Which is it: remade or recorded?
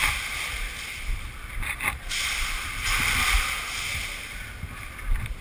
recorded